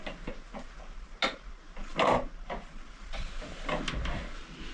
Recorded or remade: recorded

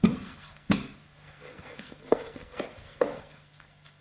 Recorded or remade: remade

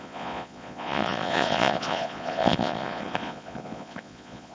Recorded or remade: remade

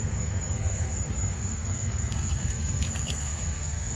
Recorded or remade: remade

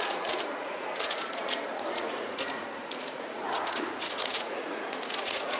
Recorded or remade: remade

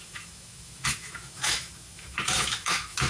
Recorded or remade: remade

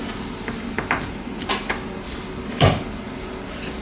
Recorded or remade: recorded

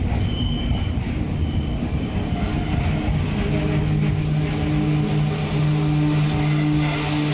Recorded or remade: recorded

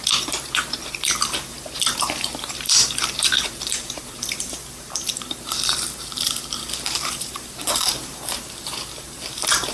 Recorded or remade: remade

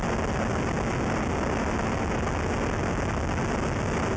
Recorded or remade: recorded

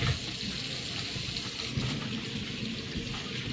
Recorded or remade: recorded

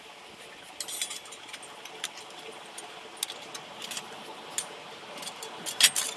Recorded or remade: recorded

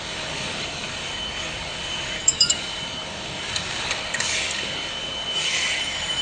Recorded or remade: remade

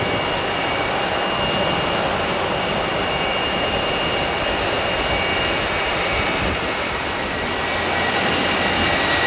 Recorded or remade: recorded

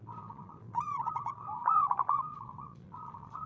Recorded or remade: remade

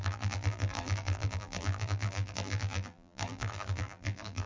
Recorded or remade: remade